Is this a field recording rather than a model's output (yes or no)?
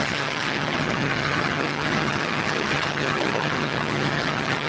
no